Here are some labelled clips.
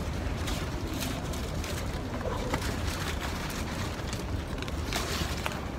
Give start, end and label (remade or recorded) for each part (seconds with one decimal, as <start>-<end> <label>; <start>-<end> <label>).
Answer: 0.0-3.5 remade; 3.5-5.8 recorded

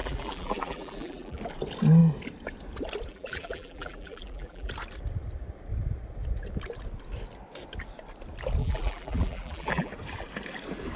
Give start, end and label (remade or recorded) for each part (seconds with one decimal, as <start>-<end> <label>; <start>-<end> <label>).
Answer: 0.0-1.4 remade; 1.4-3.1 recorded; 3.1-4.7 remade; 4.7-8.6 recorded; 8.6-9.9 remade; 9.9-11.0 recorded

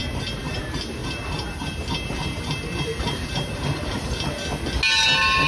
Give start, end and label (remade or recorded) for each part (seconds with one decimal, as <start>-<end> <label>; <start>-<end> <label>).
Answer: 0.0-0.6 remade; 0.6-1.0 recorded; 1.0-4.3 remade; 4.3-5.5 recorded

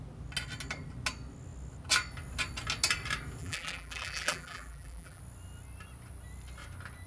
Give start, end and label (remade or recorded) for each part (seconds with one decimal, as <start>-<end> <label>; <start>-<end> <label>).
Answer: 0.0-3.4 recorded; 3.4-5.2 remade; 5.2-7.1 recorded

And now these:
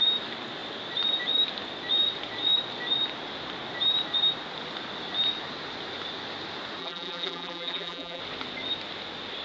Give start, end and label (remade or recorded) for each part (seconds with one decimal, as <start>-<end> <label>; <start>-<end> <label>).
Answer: 0.0-6.8 recorded; 6.8-8.2 remade; 8.2-9.4 recorded

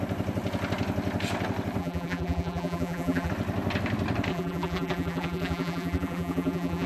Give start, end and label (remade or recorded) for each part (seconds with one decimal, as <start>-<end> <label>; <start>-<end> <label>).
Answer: 0.0-1.8 recorded; 1.8-3.3 remade; 3.3-4.3 recorded; 4.3-6.9 remade

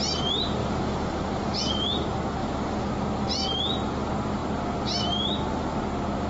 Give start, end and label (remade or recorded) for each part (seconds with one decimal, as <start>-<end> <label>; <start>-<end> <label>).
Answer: 0.0-0.6 recorded; 0.6-1.6 remade; 1.6-2.4 recorded; 2.4-2.9 remade; 2.9-6.3 recorded